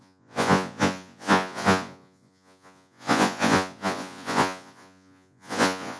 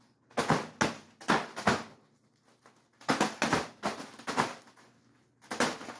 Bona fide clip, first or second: second